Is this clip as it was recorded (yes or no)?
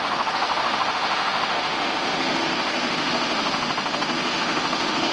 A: no